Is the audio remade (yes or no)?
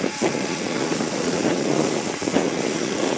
yes